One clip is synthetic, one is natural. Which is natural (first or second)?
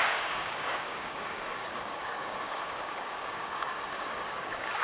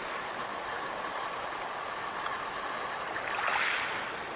second